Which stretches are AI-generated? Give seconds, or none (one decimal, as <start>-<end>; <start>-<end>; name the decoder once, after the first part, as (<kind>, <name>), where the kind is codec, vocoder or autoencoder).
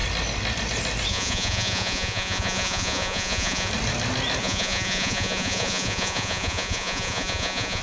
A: 1.1-3.7 (vocoder, Vocos); 4.4-7.8